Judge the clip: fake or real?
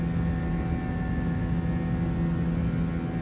real